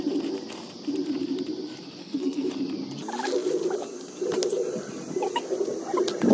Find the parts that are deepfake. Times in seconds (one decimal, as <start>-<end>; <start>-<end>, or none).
2.0-2.5